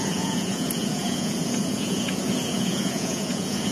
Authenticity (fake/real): fake